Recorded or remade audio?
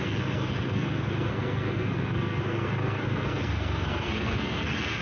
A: remade